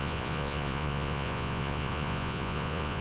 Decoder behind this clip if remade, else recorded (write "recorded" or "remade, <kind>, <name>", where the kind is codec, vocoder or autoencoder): remade, vocoder, Vocos